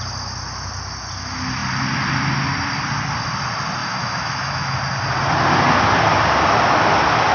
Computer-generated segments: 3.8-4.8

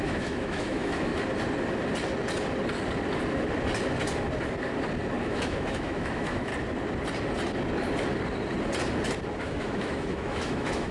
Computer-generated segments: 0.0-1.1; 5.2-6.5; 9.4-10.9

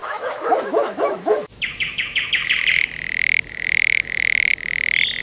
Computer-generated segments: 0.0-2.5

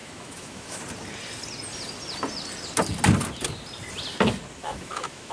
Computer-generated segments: 0.0-0.8; 4.6-5.3

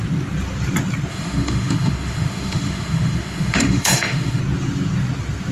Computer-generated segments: 1.1-4.4

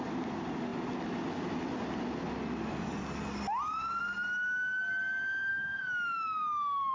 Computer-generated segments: 5.5-6.9

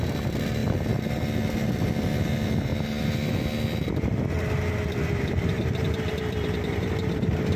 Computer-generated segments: none

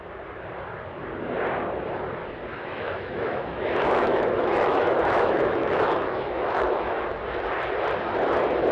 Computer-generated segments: 2.5-7.0